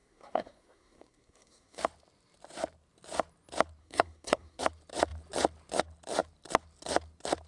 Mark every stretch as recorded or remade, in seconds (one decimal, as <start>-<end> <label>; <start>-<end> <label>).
0.0-1.8 remade; 1.8-3.8 recorded; 3.8-4.6 remade; 4.6-7.5 recorded